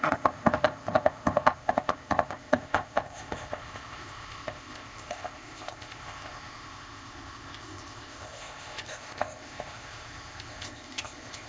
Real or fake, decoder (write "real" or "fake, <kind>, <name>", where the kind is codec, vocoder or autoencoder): fake, codec, ZipCodec